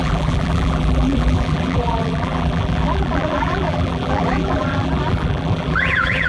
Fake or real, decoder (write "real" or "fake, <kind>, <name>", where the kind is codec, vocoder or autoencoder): fake, vocoder, BigVGAN v2